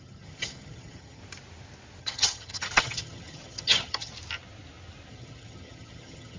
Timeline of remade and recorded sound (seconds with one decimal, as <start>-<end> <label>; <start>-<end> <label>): 0.0-1.2 remade; 1.2-2.0 recorded; 2.0-4.1 remade; 4.1-5.1 recorded; 5.1-6.4 remade